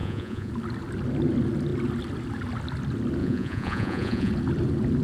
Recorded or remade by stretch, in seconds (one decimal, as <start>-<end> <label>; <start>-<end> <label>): 0.0-0.5 remade; 0.5-3.2 recorded; 3.2-4.3 remade; 4.3-5.0 recorded